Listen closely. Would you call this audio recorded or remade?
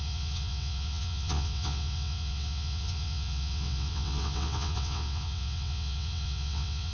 remade